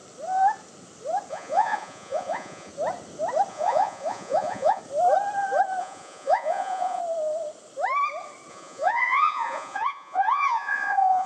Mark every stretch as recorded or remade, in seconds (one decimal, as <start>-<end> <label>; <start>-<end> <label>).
0.0-1.3 recorded; 1.3-2.7 remade; 2.7-3.5 recorded; 3.5-4.8 remade; 4.8-5.8 recorded; 5.8-7.0 remade; 7.0-8.5 recorded; 8.5-11.3 remade